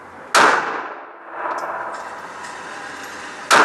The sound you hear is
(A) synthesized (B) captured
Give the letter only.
B